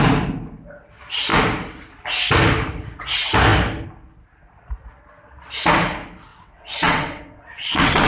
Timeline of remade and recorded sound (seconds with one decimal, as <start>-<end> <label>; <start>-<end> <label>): 0.0-6.3 recorded; 6.3-8.1 remade